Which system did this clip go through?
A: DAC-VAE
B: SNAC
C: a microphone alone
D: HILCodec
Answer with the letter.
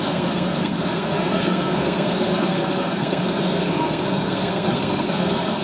B